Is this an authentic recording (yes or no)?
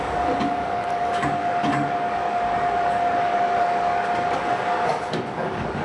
no